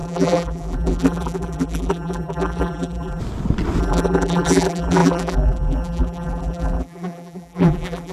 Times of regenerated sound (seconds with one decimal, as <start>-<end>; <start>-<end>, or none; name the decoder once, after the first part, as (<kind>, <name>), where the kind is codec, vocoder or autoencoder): 0.0-3.2 (vocoder, BigVGAN v2); 3.8-8.1

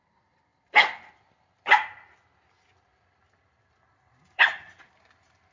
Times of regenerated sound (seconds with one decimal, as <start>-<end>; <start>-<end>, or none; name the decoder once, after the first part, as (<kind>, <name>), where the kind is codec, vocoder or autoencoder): 2.9-4.8 (vocoder, BigVGAN v2)

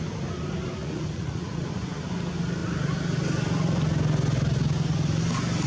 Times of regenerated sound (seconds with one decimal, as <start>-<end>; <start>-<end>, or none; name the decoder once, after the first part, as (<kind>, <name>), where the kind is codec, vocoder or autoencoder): 0.8-1.7 (vocoder, Vocos)

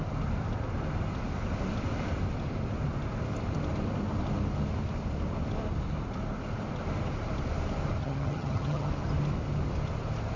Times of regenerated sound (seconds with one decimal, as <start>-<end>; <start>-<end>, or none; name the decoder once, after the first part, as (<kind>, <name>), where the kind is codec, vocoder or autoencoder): 8.0-8.9 (vocoder, HiFi-GAN)

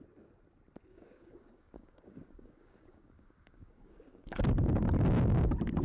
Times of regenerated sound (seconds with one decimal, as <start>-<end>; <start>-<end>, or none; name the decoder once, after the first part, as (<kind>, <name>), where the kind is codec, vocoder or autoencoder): 0.9-4.4 (codec, DAC)

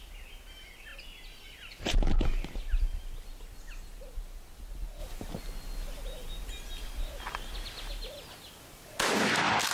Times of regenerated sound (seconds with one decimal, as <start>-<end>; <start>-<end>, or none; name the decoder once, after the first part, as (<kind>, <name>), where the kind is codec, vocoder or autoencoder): none

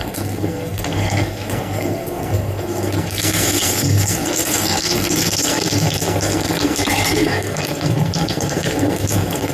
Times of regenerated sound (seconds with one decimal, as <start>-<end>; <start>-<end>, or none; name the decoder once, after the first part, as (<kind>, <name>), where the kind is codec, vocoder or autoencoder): 0.0-9.5 (codec, SNAC)

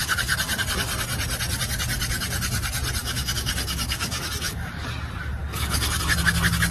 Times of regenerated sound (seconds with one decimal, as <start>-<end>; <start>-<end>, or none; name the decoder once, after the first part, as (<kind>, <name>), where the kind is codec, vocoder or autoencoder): 3.0-4.7 (codec, DAC); 5.4-6.0